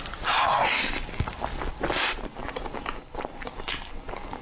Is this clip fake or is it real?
real